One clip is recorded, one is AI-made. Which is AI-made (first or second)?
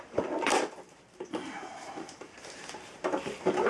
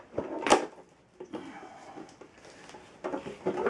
first